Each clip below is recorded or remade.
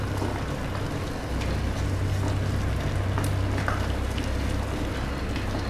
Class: recorded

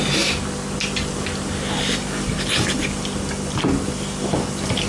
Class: recorded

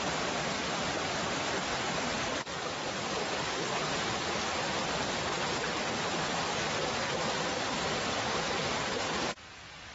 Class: recorded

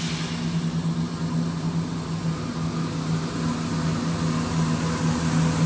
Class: recorded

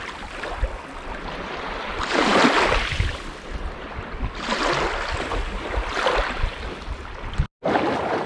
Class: recorded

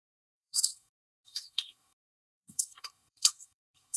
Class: remade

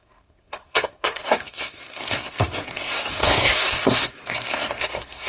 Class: remade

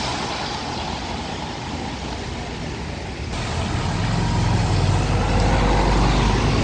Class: recorded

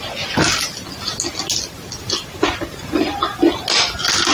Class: recorded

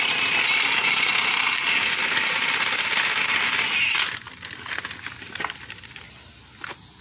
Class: recorded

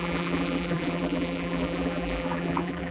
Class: remade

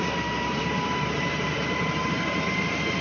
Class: remade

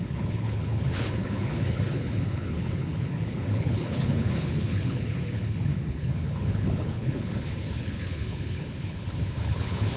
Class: remade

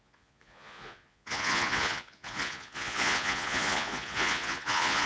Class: remade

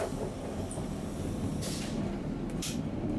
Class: remade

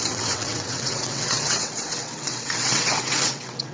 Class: remade